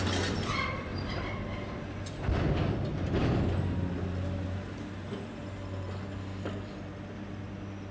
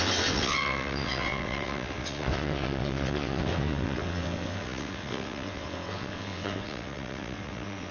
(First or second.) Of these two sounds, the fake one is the second